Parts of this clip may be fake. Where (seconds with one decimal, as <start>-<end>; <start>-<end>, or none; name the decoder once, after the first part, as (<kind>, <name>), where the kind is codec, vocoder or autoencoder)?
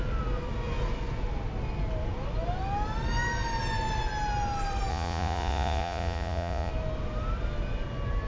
4.9-6.7 (vocoder, Vocos)